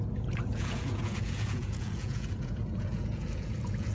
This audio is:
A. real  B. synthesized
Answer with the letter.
B